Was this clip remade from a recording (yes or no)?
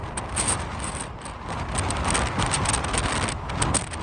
no